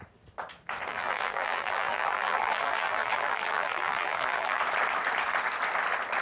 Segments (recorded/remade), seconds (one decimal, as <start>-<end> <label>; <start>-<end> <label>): 0.0-0.9 recorded; 0.9-4.6 remade; 4.6-6.2 recorded